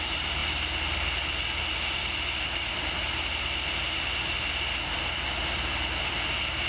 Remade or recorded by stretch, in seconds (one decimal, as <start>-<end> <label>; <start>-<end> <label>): 0.0-6.7 recorded